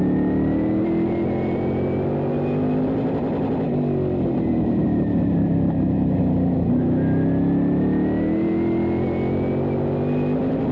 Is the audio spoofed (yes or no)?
no